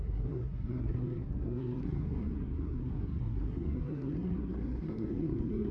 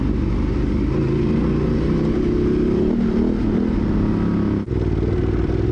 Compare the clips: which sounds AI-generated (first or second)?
first